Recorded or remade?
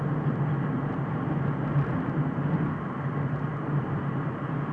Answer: recorded